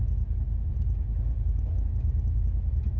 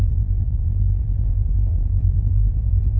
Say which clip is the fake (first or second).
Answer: second